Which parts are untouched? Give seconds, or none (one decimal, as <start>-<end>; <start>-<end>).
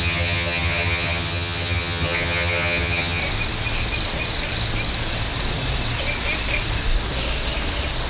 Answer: 3.2-8.1